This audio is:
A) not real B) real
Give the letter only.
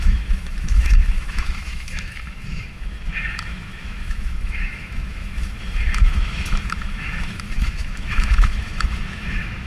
A